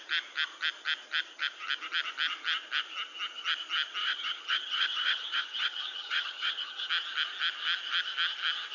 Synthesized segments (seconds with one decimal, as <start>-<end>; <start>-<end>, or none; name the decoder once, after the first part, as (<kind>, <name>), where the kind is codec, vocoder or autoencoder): 4.0-6.9 (vocoder, HiFi-GAN)